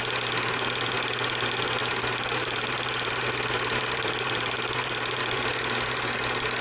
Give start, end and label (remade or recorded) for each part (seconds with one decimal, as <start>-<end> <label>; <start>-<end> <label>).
0.0-1.8 recorded; 1.8-5.2 remade; 5.2-6.6 recorded